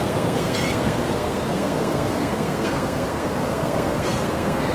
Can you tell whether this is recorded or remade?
remade